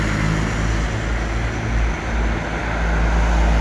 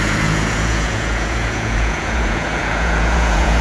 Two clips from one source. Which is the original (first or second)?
first